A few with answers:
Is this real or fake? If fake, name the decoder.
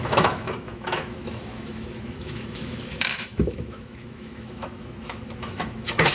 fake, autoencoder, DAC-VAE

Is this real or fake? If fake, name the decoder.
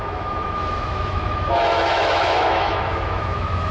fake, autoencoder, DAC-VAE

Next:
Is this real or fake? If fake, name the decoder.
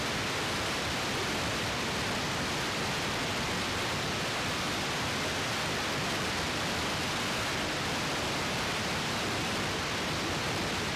real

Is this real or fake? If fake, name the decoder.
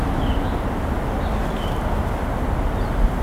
real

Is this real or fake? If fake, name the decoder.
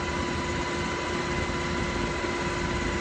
real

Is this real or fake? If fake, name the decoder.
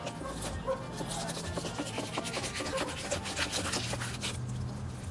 real